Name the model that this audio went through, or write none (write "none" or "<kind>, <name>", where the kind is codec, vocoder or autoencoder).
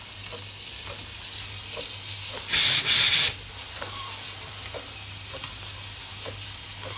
none